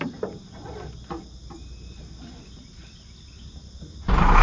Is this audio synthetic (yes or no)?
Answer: no